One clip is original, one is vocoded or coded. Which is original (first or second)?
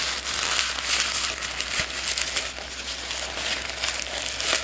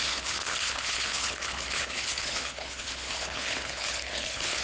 first